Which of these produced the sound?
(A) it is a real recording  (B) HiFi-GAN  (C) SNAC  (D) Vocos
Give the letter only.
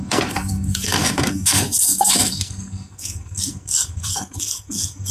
C